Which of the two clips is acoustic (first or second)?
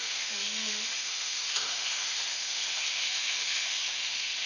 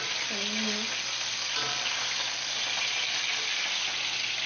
second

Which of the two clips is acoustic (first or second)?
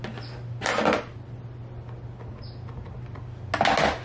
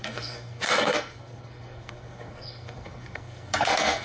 first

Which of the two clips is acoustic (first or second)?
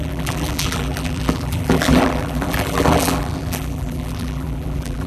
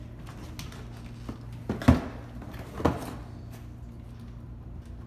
second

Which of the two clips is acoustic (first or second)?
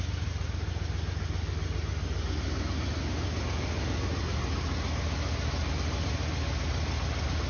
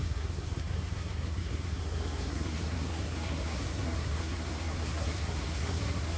first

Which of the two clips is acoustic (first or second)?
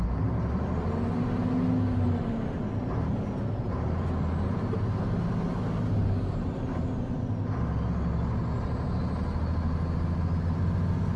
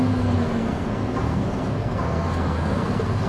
first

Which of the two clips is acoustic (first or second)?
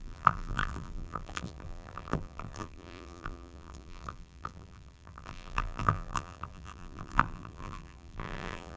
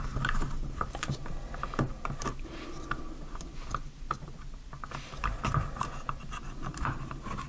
second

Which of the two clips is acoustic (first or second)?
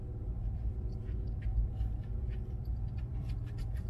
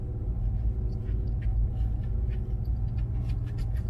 second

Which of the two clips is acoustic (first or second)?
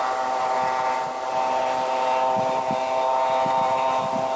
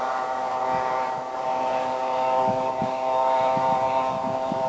first